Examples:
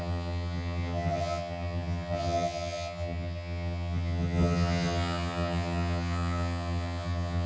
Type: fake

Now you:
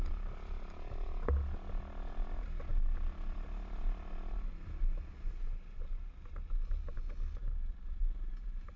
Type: real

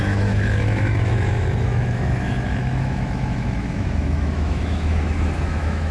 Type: fake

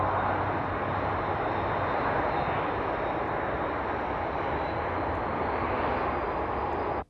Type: real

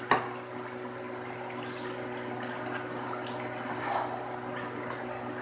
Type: real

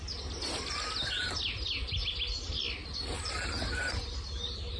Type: real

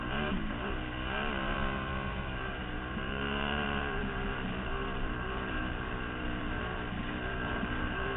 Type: fake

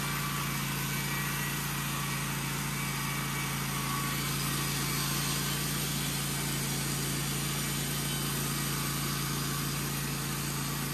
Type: real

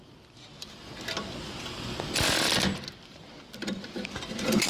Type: real